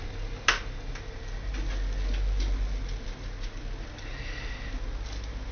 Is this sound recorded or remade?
recorded